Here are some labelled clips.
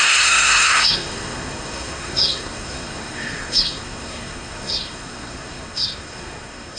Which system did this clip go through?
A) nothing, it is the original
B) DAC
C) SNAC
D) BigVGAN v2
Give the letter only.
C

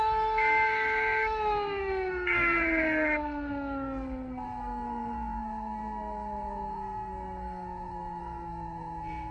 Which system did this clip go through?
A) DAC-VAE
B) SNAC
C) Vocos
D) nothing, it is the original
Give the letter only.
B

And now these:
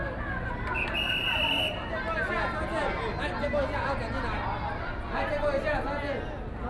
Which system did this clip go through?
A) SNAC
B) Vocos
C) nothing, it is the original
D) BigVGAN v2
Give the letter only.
C